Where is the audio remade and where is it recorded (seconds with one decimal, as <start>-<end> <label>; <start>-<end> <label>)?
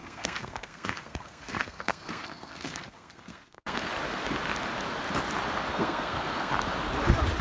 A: 0.0-3.9 remade; 3.9-5.7 recorded; 5.7-6.5 remade; 6.5-7.4 recorded